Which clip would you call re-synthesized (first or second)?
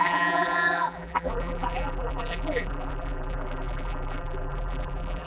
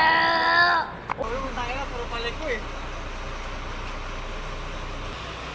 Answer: first